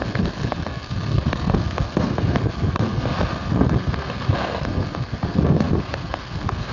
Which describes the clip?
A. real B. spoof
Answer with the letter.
B